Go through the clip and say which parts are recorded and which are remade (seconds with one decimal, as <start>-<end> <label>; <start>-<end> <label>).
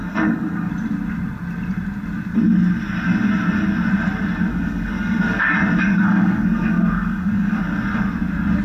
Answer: 0.0-0.7 remade; 0.7-4.5 recorded; 4.5-5.5 remade; 5.5-5.9 recorded; 5.9-7.6 remade; 7.6-8.6 recorded